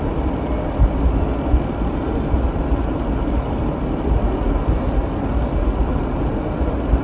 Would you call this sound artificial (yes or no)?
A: no